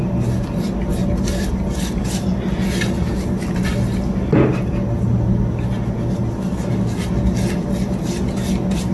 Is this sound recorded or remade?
recorded